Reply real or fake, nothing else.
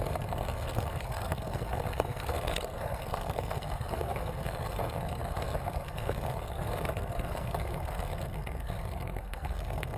fake